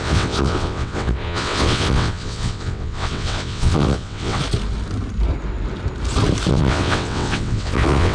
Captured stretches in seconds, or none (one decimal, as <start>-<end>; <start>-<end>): 4.4-6.5